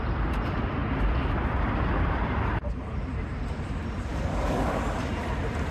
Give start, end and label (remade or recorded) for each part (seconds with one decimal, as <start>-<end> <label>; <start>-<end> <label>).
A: 0.0-4.1 recorded; 4.1-4.8 remade; 4.8-5.7 recorded